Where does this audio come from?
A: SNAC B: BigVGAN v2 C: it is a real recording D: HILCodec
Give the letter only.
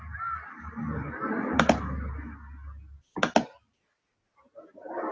C